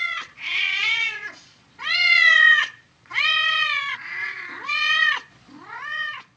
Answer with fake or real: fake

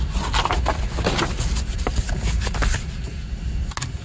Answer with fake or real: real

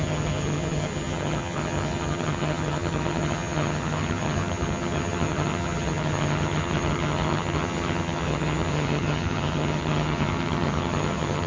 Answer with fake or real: fake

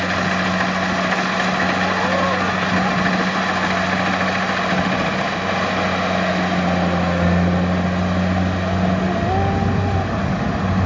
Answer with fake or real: real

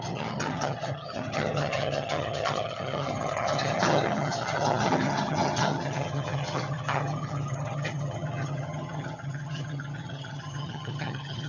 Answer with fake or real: fake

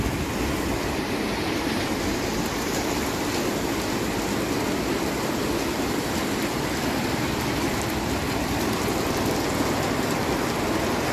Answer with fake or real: real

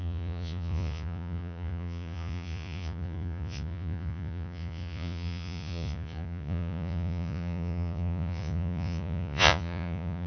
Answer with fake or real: fake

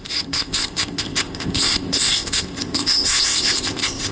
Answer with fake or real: fake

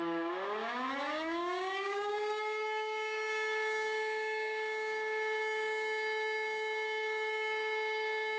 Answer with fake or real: fake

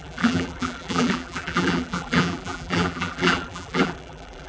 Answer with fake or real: fake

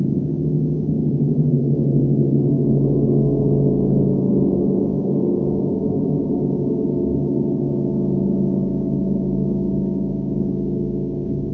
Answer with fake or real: fake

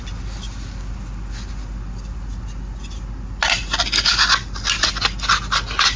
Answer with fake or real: real